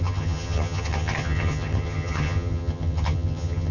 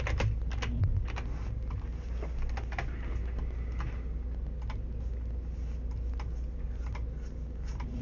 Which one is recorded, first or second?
second